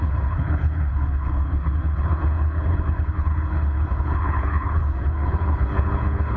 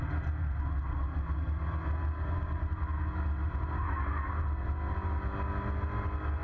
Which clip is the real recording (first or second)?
second